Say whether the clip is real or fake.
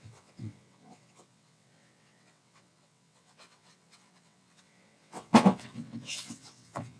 fake